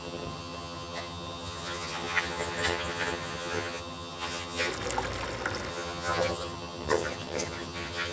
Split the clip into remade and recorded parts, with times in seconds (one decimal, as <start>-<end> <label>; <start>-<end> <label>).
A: 0.0-4.7 remade; 4.7-5.7 recorded; 5.7-8.1 remade